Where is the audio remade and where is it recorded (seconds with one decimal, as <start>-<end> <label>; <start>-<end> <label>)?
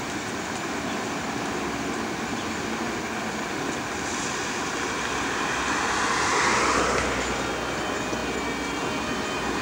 0.0-9.6 recorded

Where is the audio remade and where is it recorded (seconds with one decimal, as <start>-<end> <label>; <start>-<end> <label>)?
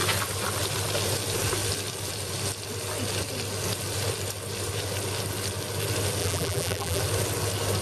0.0-6.2 recorded; 6.2-7.0 remade; 7.0-7.8 recorded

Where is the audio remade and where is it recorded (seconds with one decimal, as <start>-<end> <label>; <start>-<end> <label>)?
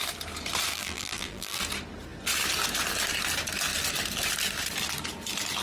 0.0-0.7 recorded; 0.7-1.6 remade; 1.6-5.6 recorded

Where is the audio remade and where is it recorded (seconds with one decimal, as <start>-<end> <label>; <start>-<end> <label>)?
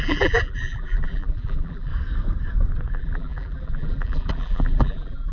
0.0-1.9 remade; 1.9-2.9 recorded; 2.9-5.3 remade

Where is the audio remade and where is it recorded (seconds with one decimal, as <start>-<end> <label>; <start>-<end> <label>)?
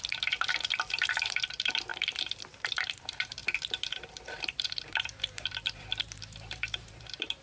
0.0-7.4 remade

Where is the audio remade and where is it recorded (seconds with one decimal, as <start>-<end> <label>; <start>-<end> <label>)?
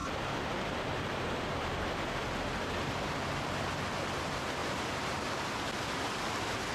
0.0-1.6 remade; 1.6-4.6 recorded; 4.6-5.2 remade; 5.2-6.7 recorded